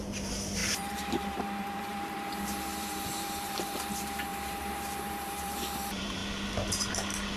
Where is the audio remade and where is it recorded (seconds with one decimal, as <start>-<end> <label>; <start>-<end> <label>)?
0.0-6.2 remade; 6.2-7.4 recorded